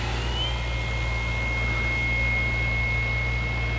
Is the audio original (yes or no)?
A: yes